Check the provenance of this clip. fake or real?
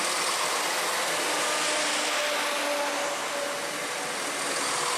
real